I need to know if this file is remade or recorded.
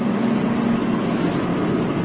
recorded